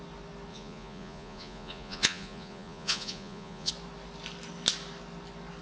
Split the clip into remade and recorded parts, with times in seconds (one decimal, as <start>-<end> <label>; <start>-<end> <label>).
0.0-0.5 recorded; 0.5-3.7 remade; 3.7-5.6 recorded